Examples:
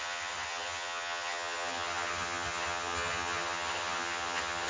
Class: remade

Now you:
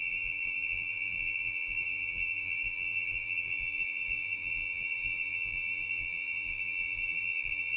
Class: remade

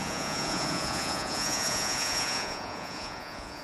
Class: remade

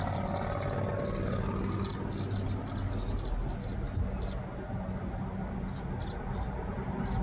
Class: recorded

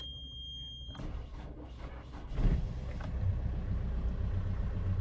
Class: recorded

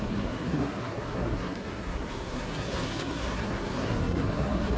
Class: remade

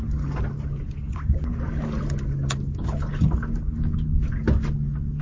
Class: recorded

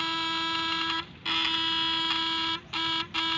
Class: recorded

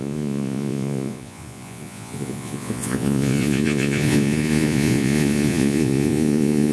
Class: remade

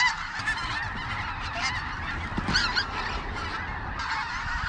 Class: recorded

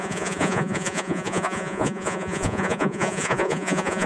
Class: remade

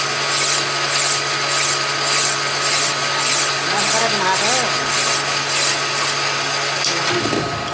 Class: recorded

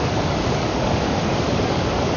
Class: remade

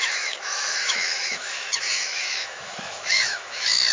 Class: remade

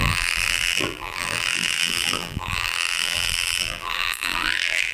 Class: remade